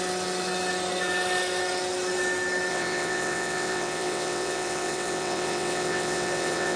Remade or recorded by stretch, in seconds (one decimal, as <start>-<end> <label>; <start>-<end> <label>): 0.0-2.7 recorded; 2.7-6.8 remade